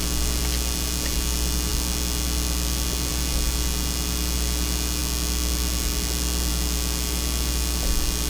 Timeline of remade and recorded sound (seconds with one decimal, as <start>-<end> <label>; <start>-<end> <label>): 0.0-8.3 recorded

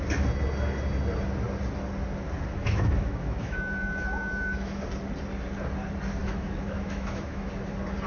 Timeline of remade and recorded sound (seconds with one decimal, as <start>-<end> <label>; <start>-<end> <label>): 0.0-2.6 recorded; 2.6-4.8 remade; 4.8-6.2 recorded; 6.2-7.5 remade; 7.5-8.1 recorded

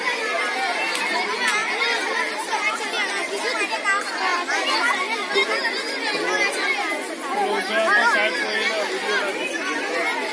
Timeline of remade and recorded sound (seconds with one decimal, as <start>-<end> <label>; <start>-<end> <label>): 0.0-10.3 recorded

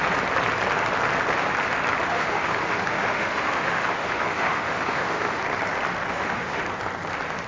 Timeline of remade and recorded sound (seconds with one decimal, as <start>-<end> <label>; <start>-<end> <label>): 0.0-2.1 recorded; 2.1-5.4 remade; 5.4-6.1 recorded; 6.1-6.6 remade; 6.6-7.5 recorded

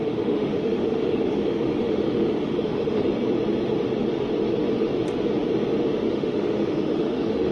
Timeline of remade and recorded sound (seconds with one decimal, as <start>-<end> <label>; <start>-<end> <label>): 0.0-3.1 remade; 3.1-6.1 recorded; 6.1-7.5 remade

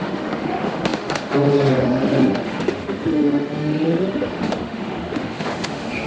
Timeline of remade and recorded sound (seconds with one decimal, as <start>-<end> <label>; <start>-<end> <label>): 0.0-6.1 remade